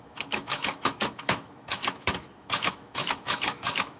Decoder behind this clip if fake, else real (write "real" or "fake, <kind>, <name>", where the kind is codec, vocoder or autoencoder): fake, autoencoder, DAC-VAE